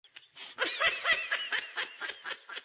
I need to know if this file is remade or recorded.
recorded